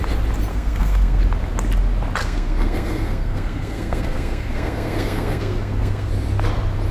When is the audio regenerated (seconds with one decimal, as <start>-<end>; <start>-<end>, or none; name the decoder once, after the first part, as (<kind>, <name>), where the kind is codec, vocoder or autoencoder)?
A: 0.5-1.2 (codec, SNAC); 2.2-6.1